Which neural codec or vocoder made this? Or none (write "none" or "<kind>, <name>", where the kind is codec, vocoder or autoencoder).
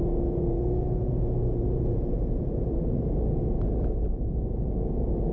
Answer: vocoder, Vocos